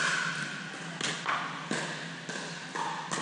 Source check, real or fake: real